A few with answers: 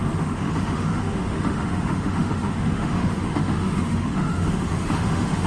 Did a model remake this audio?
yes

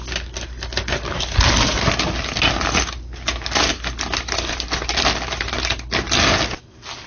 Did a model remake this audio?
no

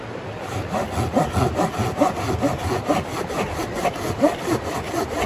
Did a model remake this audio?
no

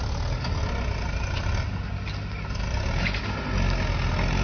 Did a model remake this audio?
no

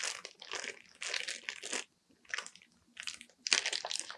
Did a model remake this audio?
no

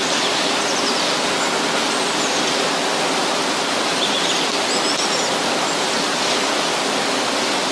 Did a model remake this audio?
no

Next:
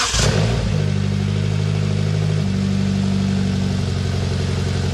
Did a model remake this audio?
no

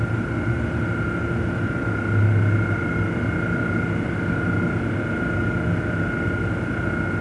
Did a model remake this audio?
no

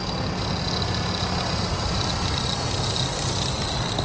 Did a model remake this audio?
no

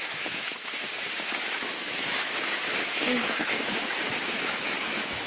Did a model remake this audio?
yes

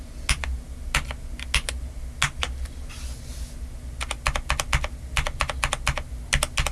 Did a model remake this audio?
no